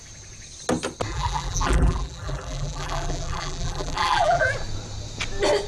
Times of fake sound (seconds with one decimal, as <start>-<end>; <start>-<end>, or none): 1.1-4.5